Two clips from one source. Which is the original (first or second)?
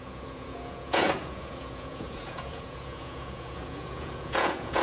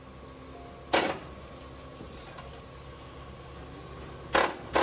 second